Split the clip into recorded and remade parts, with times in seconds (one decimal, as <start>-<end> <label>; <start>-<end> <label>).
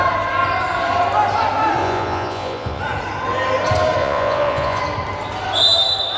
0.0-1.8 recorded; 1.8-2.8 remade; 2.8-4.0 recorded; 4.0-4.8 remade; 4.8-6.2 recorded